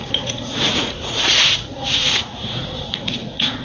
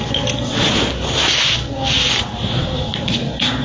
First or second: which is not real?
first